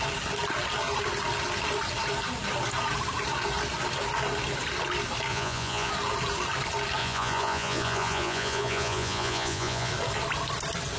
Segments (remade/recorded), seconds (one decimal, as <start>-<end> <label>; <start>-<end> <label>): 0.0-5.3 recorded; 5.3-5.9 remade; 5.9-7.0 recorded; 7.0-9.9 remade; 9.9-11.0 recorded